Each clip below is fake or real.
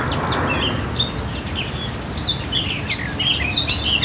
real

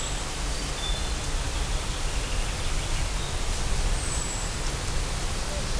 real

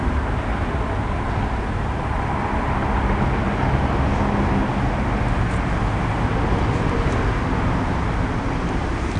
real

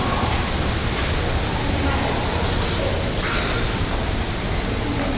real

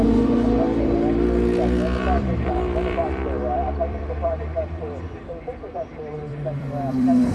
fake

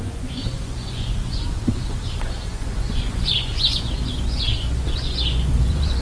fake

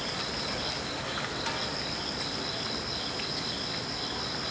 real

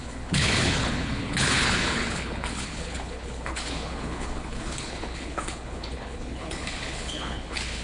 fake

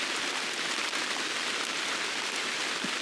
real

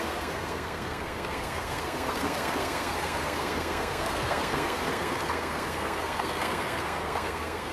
fake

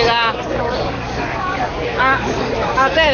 fake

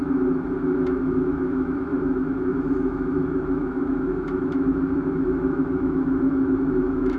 fake